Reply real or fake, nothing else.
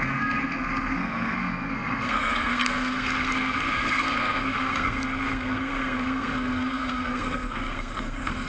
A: fake